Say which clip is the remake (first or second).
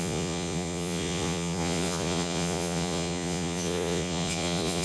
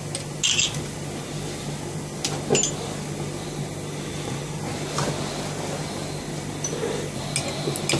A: first